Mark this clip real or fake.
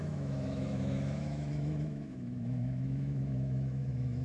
fake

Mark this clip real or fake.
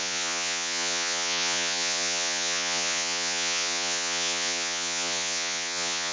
fake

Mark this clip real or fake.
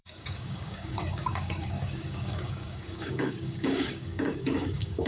fake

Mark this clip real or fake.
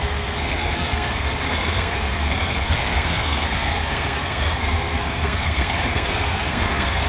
fake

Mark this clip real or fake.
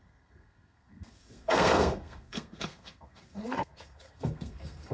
fake